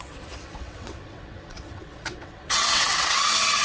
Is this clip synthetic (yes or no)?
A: yes